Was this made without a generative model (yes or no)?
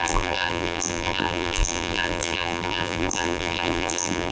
no